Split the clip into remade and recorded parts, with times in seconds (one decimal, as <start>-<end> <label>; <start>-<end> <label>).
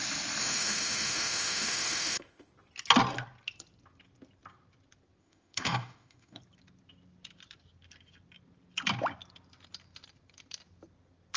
0.0-0.4 recorded; 0.4-2.5 remade; 2.5-5.2 recorded; 5.2-6.4 remade; 6.4-11.4 recorded